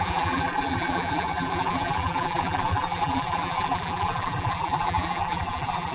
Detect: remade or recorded remade